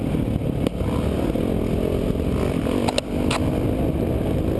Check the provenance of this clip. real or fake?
real